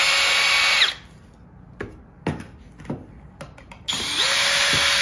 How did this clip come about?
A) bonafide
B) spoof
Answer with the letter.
A